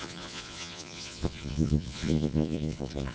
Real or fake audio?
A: fake